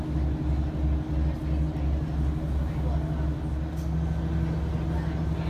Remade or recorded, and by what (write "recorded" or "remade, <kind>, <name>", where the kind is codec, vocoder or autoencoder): recorded